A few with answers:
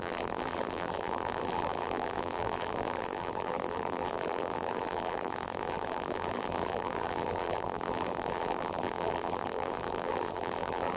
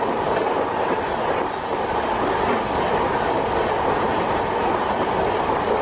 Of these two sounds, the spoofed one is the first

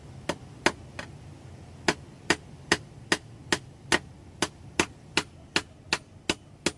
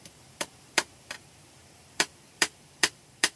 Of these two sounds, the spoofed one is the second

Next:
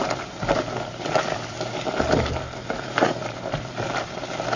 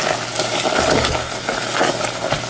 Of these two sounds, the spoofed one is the first